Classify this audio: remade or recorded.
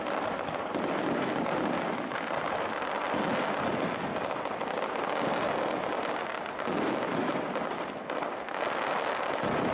recorded